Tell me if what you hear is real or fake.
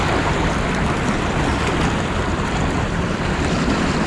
real